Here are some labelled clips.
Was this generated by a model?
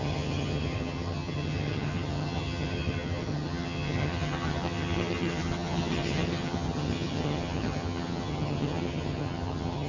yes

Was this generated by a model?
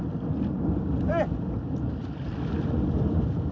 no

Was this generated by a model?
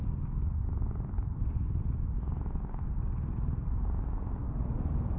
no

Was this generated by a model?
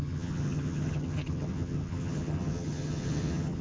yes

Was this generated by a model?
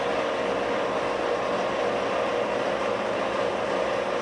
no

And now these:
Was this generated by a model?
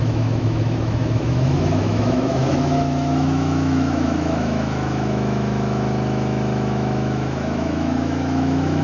yes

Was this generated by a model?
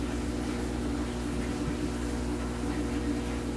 no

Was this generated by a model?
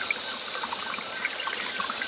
no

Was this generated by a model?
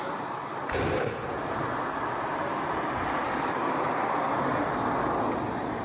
no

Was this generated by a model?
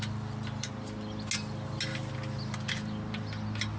no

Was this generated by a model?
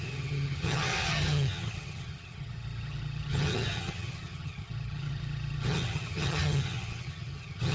yes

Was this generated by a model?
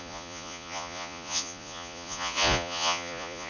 yes